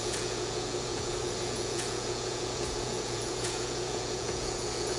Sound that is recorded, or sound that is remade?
remade